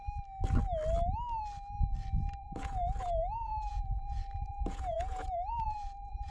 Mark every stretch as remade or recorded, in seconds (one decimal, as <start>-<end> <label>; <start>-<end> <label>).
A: 0.0-2.4 recorded; 2.4-6.3 remade